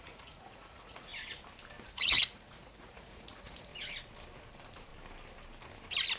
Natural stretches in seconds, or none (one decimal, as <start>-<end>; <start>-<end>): 1.1-1.9; 3.7-4.5; 4.9-6.2